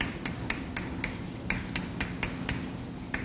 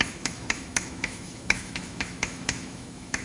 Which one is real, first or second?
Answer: first